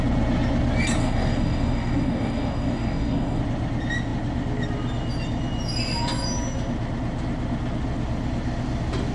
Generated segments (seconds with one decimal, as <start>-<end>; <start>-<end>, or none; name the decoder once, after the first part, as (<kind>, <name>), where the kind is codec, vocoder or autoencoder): 1.0-3.4 (codec, DAC)